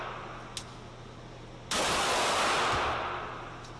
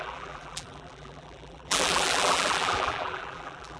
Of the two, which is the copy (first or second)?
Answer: second